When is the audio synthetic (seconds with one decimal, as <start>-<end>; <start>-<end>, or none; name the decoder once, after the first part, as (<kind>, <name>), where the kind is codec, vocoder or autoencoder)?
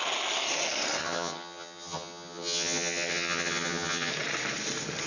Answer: 1.0-4.1 (vocoder, HiFi-GAN)